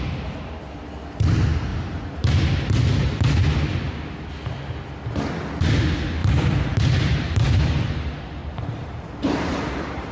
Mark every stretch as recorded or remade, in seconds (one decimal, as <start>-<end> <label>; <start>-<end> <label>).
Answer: 0.0-1.7 recorded; 1.7-2.4 remade; 2.4-6.2 recorded; 6.2-7.6 remade; 7.6-8.4 recorded; 8.4-10.1 remade